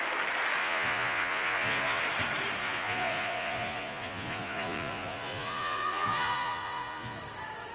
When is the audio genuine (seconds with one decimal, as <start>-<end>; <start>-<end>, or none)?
0.0-0.6; 2.0-2.6; 7.2-7.7